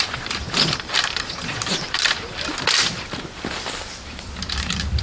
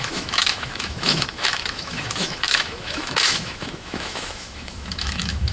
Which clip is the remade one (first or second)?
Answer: second